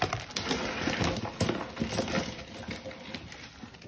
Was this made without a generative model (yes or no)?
yes